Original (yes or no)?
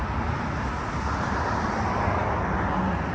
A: yes